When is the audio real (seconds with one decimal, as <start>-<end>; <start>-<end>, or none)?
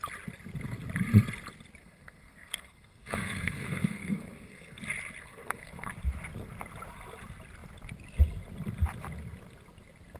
0.0-1.8; 4.8-5.2; 5.9-10.2